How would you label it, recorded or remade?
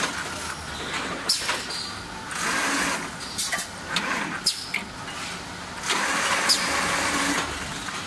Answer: recorded